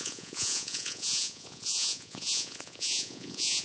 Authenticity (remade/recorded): remade